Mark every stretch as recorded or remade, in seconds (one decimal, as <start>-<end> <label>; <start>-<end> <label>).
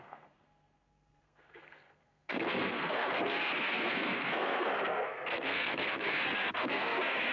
0.0-7.3 remade